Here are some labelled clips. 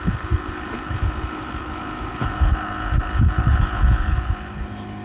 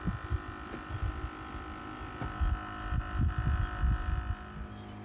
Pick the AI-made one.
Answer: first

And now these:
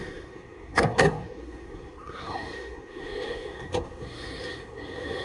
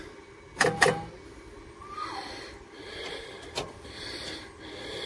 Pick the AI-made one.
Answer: first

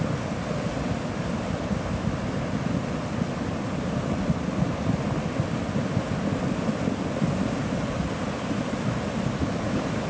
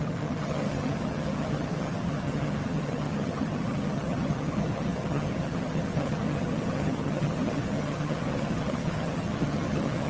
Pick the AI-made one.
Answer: second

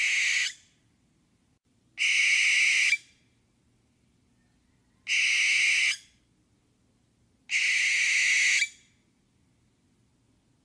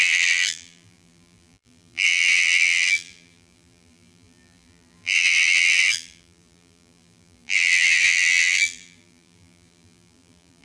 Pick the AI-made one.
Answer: second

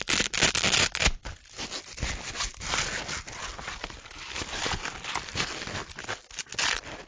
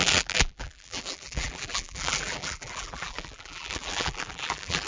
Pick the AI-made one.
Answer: second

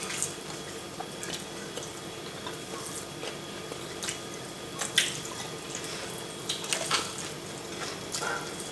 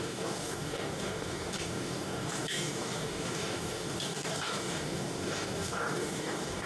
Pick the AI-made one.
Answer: second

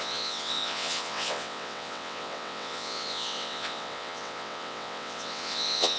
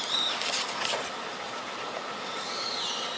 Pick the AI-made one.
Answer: first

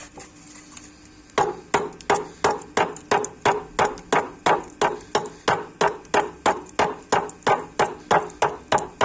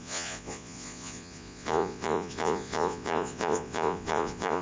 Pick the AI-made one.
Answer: second